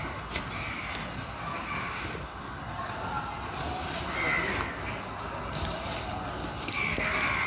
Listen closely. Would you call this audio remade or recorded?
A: recorded